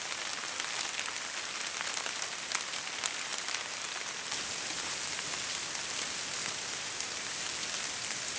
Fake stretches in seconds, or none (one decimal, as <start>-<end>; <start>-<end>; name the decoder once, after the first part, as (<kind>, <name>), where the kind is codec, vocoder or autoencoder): none